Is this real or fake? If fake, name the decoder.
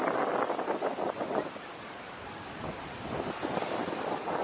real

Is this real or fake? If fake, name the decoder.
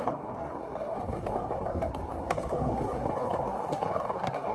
fake, codec, SNAC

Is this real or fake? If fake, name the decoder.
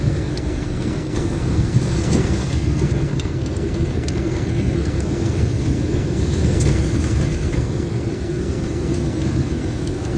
fake, codec, SNAC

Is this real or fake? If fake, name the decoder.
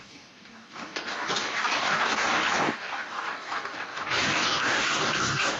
fake, codec, DAC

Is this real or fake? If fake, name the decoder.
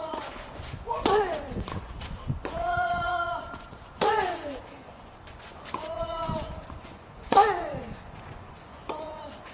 fake, vocoder, Vocos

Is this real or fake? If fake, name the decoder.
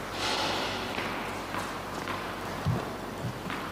real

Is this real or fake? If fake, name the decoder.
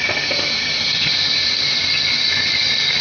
real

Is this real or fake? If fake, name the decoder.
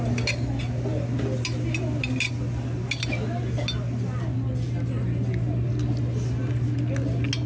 real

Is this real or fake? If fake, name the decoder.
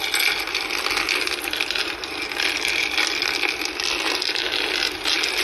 real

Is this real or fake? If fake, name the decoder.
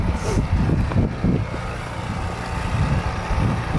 real